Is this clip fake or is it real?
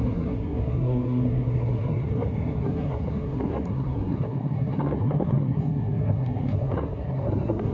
fake